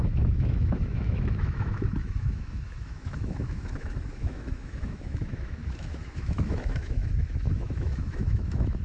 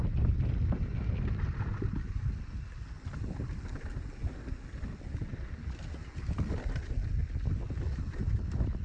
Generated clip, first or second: first